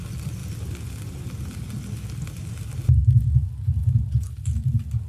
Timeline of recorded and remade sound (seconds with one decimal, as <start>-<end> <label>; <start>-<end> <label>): 0.0-5.1 recorded